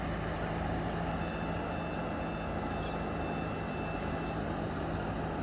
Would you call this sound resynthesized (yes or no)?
no